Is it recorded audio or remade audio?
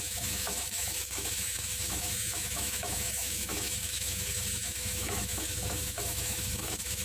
remade